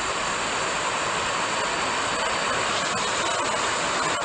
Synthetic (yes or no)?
no